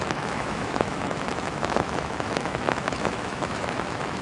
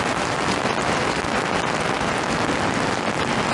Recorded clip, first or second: second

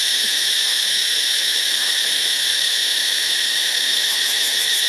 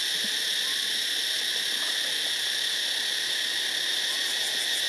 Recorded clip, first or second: second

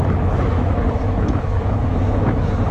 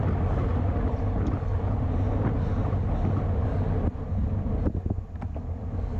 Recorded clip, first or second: second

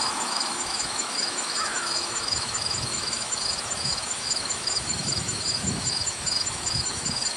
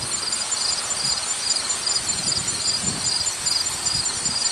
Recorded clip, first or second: second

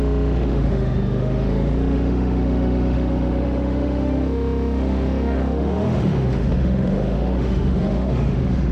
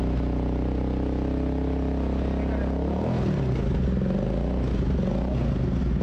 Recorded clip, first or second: second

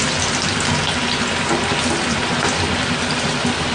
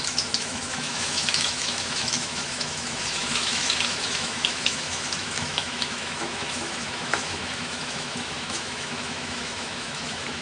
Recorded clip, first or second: first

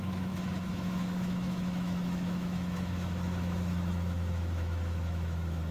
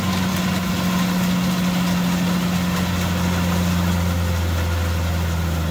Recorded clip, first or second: second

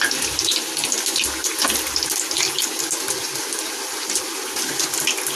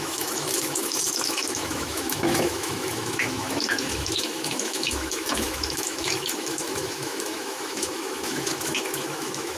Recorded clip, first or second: first